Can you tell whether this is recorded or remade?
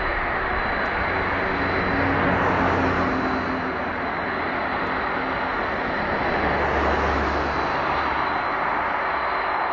recorded